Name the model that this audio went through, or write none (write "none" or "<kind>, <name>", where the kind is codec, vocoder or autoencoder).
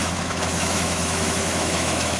autoencoder, DAC-VAE